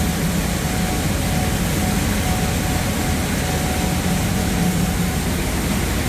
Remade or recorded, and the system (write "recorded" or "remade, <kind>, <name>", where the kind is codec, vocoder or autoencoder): recorded